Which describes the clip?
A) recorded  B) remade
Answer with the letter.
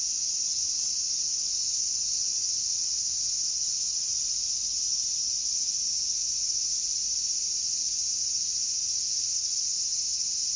A